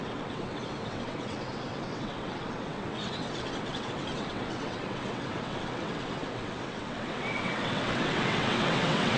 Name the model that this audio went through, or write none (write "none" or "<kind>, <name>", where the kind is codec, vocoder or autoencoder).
vocoder, WaveNeXt